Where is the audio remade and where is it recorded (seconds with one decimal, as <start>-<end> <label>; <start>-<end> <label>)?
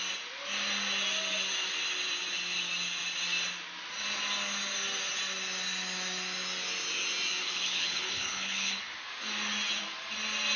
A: 0.0-7.4 recorded; 7.4-8.8 remade; 8.8-10.6 recorded